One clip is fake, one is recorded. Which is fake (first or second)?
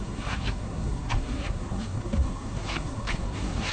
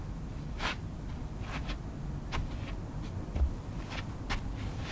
first